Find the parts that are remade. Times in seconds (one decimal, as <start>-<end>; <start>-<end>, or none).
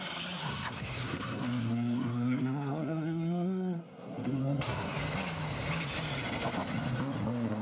0.4-5.0